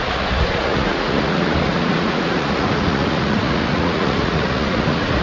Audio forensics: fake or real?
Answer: fake